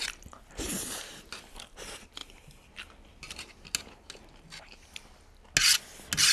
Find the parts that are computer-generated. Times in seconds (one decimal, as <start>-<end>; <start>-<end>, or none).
none